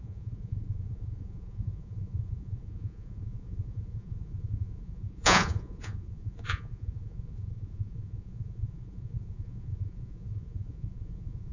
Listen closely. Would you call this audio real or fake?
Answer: fake